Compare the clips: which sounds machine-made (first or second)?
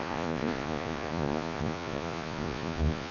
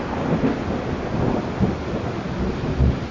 first